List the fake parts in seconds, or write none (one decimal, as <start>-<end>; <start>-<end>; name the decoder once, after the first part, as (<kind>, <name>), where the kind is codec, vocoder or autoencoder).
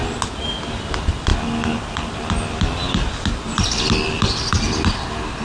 none